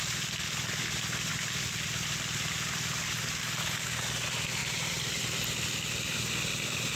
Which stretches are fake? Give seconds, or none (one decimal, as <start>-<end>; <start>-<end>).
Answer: 1.3-3.0; 4.6-5.2